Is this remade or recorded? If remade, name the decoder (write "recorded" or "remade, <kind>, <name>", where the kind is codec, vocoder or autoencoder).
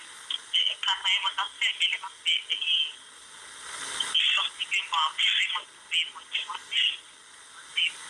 recorded